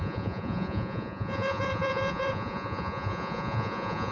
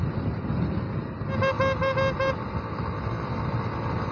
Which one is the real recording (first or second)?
second